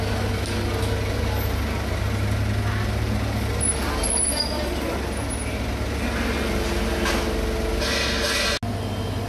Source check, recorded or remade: recorded